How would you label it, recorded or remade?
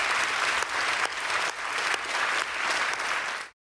recorded